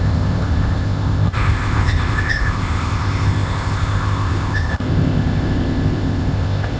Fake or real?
fake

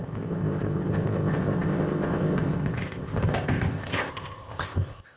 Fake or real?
fake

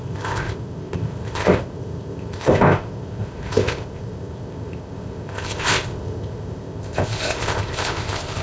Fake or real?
fake